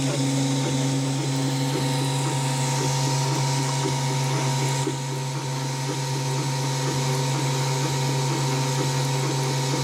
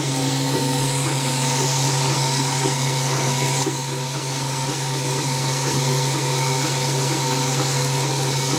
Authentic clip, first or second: first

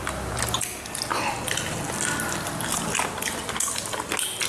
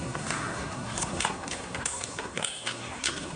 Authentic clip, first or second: first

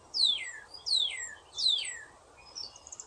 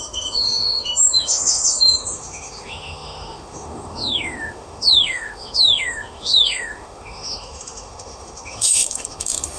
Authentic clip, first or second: first